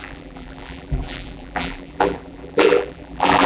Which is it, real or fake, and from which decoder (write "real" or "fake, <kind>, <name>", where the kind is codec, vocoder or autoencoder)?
fake, vocoder, BigVGAN v2